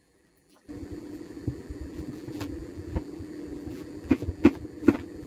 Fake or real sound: fake